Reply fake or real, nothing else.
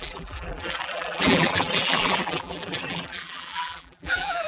fake